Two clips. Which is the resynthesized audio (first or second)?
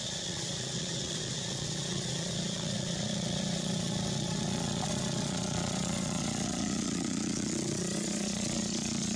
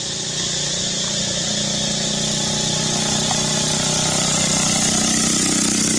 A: first